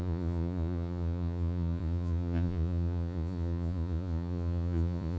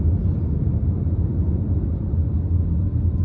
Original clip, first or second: second